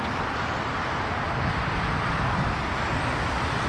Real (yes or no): yes